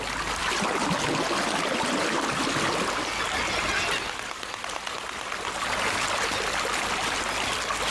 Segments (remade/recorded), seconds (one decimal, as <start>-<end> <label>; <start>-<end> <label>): 0.0-7.9 recorded